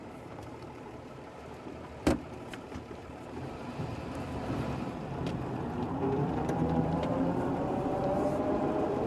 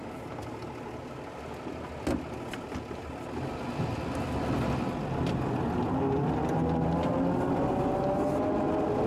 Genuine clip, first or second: second